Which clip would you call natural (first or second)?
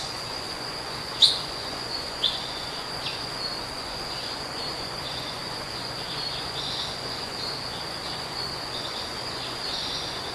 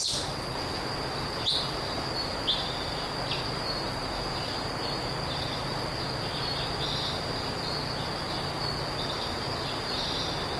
second